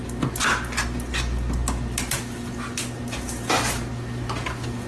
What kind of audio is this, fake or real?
real